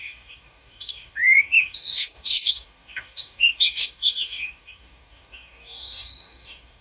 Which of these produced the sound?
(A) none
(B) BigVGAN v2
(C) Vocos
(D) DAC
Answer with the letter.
D